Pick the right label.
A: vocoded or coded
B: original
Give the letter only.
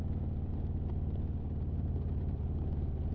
B